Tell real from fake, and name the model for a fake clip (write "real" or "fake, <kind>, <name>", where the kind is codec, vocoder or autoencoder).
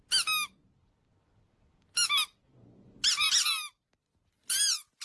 real